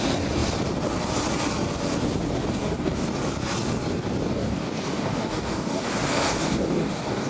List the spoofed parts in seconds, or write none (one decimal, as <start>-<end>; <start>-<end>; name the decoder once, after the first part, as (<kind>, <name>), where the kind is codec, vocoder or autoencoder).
2.5-3.1 (codec, DAC); 4.3-7.3